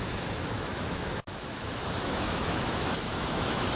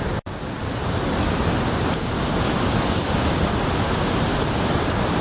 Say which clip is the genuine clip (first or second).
second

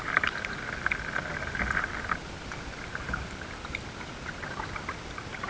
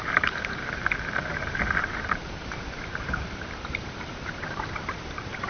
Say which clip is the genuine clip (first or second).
first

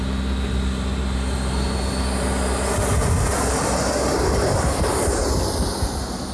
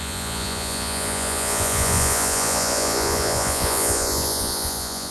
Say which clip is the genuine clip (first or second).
first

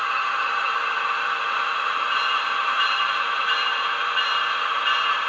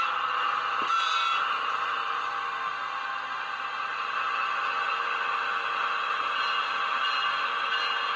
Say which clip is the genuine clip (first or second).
second